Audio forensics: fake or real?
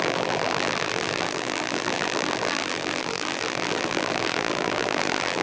fake